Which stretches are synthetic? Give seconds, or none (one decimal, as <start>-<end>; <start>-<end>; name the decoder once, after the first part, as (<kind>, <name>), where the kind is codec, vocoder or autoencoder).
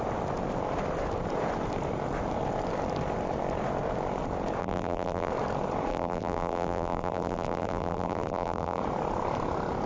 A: 4.6-5.3 (vocoder, BigVGAN v2); 5.9-8.8